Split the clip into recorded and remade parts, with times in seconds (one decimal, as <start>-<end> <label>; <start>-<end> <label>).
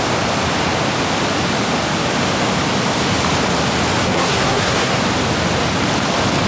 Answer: 0.0-4.0 recorded; 4.0-5.0 remade; 5.0-6.5 recorded